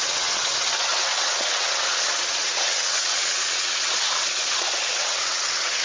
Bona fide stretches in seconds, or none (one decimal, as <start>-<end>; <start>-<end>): none